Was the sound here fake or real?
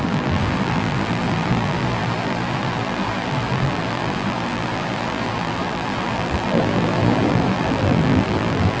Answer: fake